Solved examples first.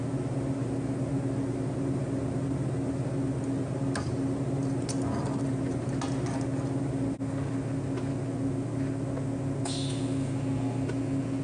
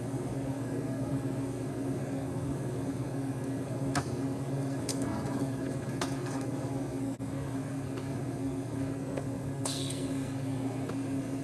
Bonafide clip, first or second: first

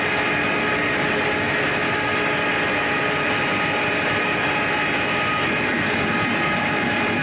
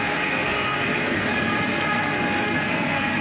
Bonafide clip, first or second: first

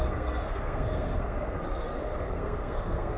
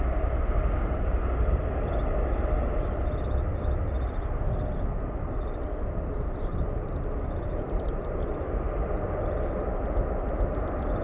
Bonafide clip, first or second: second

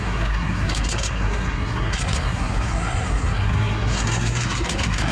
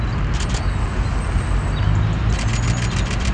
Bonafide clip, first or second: second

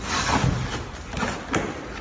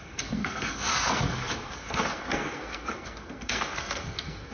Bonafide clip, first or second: first